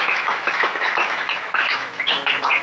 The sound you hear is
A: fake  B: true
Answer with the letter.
A